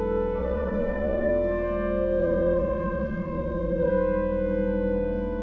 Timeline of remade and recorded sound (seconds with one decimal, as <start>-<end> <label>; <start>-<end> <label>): 0.0-0.4 recorded; 0.4-1.3 remade; 1.3-2.2 recorded; 2.2-3.9 remade; 3.9-5.4 recorded